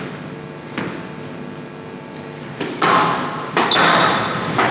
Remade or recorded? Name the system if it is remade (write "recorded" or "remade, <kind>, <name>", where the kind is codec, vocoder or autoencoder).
recorded